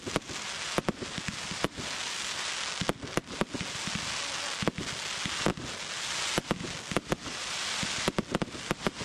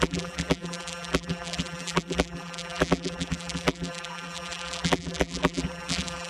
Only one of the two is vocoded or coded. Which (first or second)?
second